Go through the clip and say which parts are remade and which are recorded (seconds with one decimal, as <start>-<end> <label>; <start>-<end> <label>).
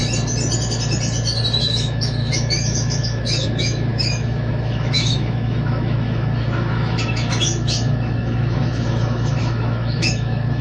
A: 0.0-1.6 recorded; 1.6-10.6 remade